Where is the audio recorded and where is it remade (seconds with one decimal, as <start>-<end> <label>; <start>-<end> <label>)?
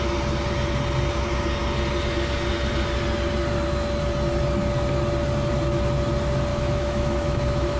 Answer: 0.0-6.5 recorded; 6.5-7.8 remade